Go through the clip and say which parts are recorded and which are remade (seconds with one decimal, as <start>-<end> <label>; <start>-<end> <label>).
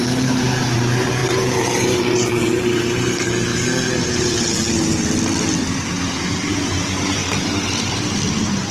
0.0-8.7 recorded